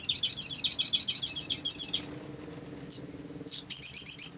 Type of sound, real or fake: real